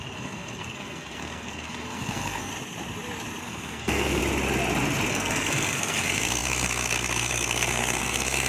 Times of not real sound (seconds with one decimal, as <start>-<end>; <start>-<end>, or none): 0.0-2.5; 3.4-4.2; 5.1-8.5